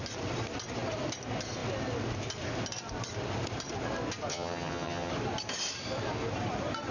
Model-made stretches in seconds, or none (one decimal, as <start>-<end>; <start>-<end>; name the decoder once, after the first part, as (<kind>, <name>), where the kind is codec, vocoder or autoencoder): 4.3-5.1 (vocoder, HiFi-GAN)